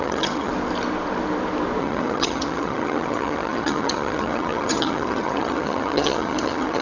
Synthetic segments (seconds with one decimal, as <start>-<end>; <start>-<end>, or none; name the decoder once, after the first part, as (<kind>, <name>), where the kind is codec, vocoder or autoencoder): 0.0-0.5 (vocoder, HiFi-GAN); 1.8-6.8